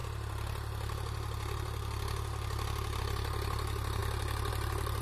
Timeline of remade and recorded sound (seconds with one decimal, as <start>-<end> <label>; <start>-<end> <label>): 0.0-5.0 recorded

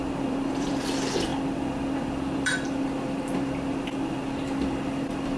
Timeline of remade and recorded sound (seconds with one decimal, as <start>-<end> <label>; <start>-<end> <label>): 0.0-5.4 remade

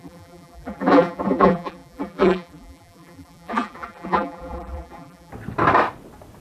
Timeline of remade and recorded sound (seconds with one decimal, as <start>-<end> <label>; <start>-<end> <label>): 0.0-5.3 remade; 5.3-6.4 recorded